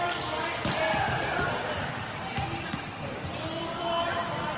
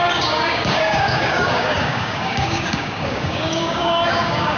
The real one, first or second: first